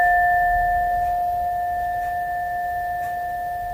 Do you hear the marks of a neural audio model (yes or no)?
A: no